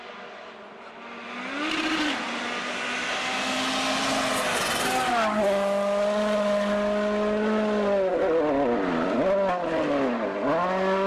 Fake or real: real